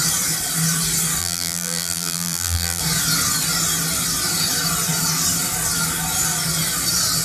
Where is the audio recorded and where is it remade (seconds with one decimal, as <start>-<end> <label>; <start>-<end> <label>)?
0.0-1.2 recorded; 1.2-2.8 remade; 2.8-7.2 recorded